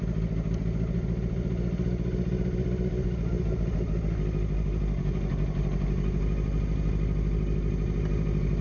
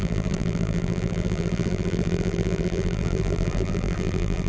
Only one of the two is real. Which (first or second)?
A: first